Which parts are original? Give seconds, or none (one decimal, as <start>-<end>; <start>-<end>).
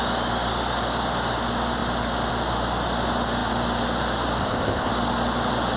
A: 0.0-4.4; 4.9-5.8